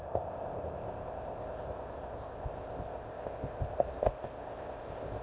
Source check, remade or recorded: remade